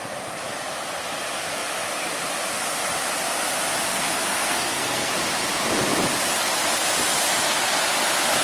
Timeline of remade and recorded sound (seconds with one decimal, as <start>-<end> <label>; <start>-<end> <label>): 0.0-3.9 recorded; 3.9-5.1 remade; 5.1-8.4 recorded